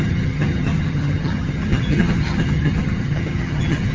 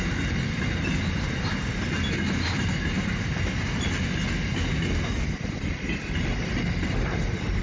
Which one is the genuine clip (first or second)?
second